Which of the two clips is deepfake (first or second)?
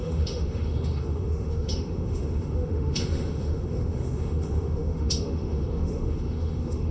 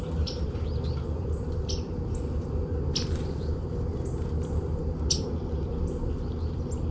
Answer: first